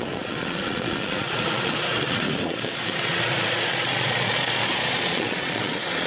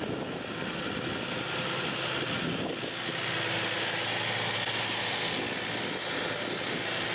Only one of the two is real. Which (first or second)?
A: second